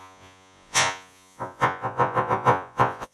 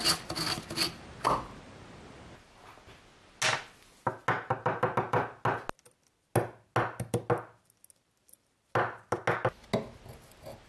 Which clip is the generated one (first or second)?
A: first